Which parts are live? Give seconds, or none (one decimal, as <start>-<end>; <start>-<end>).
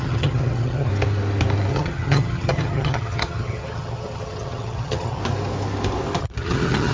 0.9-1.7; 5.2-6.2